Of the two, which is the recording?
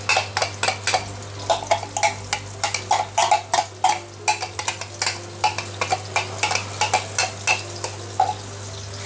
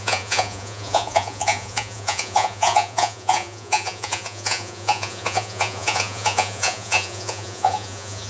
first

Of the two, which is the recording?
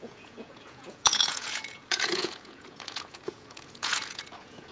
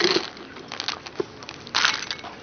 second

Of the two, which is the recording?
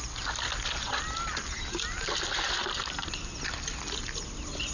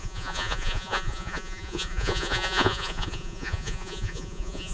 first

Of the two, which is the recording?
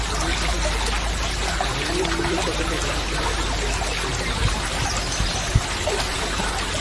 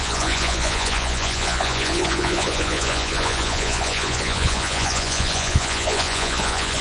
first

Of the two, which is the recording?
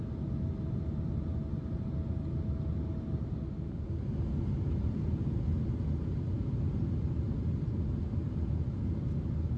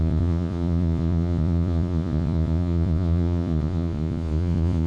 first